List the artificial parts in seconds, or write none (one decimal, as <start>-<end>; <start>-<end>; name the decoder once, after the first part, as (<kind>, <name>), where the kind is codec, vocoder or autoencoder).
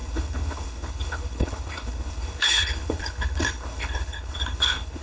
0.0-5.0 (codec, HILCodec)